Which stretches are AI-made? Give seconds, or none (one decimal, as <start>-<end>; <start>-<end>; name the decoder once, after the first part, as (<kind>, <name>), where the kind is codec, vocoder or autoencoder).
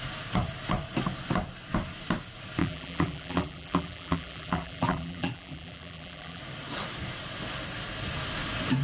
2.6-6.4 (vocoder, BigVGAN v2)